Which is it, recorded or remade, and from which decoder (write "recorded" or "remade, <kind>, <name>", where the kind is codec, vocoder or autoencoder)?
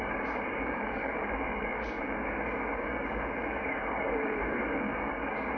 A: remade, codec, DAC